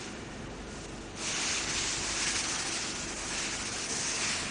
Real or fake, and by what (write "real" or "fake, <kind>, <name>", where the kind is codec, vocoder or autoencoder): real